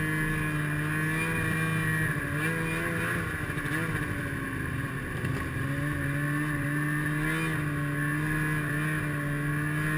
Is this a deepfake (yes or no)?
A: no